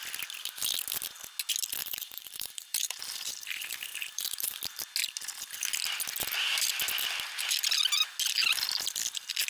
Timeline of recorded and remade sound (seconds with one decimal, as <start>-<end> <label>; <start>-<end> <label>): 0.0-1.8 recorded; 1.8-3.0 remade; 3.0-3.9 recorded; 3.9-4.6 remade; 4.6-9.5 recorded

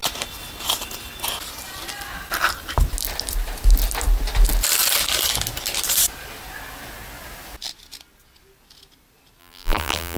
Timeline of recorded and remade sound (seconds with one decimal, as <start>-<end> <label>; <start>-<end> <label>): 0.0-9.4 recorded; 9.4-10.2 remade

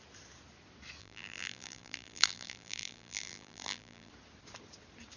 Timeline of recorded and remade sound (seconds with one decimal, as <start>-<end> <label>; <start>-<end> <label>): 0.0-1.0 recorded; 1.0-4.1 remade; 4.1-5.2 recorded

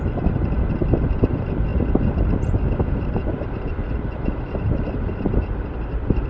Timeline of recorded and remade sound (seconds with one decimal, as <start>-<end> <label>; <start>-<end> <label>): 0.0-1.7 remade; 1.7-3.9 recorded; 3.9-6.3 remade

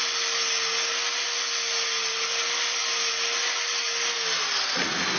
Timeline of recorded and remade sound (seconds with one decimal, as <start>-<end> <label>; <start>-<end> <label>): 0.0-5.2 recorded

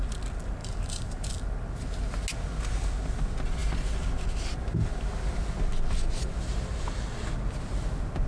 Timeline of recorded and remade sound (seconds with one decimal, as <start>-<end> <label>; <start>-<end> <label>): 0.0-0.6 recorded; 0.6-1.3 remade; 1.3-8.3 recorded